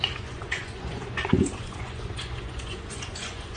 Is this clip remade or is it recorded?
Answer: remade